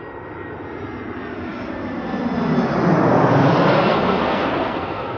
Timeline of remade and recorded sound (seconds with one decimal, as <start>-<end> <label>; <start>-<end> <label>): 0.0-3.9 recorded; 3.9-5.2 remade